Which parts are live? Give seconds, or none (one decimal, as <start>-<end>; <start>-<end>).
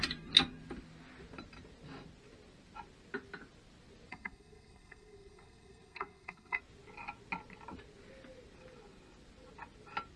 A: 0.0-4.1; 6.6-10.2